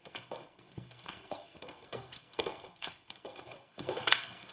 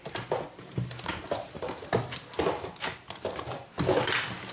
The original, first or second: second